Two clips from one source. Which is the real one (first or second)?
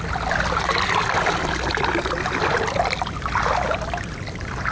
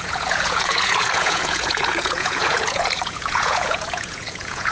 first